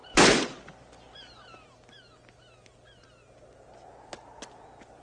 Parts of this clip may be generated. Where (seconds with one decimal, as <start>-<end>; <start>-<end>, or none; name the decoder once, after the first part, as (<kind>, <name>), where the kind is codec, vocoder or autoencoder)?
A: none